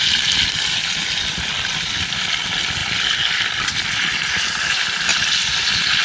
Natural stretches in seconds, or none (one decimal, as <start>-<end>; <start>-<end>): 0.0-6.0